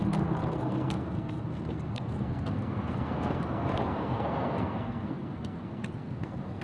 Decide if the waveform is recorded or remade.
remade